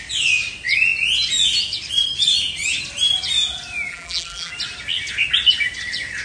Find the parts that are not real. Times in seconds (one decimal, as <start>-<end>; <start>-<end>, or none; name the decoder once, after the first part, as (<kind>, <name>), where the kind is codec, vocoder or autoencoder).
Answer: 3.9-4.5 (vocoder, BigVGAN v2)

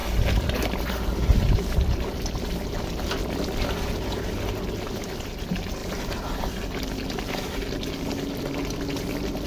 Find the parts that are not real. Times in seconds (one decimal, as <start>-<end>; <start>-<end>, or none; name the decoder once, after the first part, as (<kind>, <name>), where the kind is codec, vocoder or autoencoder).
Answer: 5.8-6.5 (vocoder, BigVGAN v2)

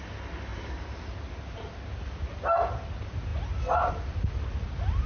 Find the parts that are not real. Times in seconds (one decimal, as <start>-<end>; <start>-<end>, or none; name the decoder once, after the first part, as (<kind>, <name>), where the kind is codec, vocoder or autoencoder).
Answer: 0.5-1.0 (vocoder, BigVGAN v2)

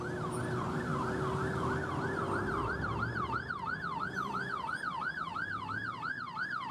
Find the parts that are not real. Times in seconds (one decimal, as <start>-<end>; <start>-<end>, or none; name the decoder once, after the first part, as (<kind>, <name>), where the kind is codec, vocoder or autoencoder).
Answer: 2.6-6.7 (vocoder, BigVGAN v2)

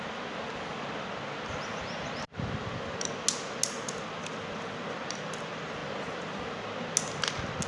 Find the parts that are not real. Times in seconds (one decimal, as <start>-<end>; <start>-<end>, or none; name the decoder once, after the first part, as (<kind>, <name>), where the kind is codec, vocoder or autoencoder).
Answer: 5.8-6.4 (vocoder, BigVGAN v2)

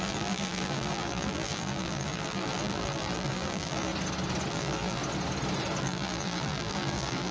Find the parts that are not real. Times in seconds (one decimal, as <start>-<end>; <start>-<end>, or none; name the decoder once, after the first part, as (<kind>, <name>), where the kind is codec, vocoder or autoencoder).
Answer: 0.0-3.9 (vocoder, BigVGAN v2); 4.5-5.0; 5.8-7.3